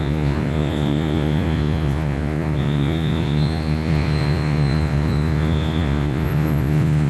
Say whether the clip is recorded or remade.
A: remade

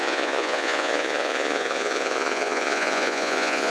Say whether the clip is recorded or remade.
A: remade